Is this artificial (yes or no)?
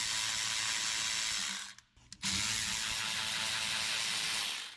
no